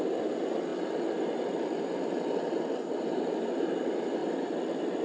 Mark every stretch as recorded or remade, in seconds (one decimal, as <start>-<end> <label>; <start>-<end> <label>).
0.0-5.0 recorded